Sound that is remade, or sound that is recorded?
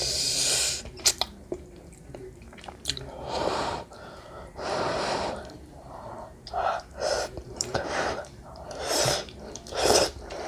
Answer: remade